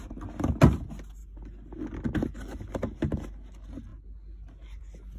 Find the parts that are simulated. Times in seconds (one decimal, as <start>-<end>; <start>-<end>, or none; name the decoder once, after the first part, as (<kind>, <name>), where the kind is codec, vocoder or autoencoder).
none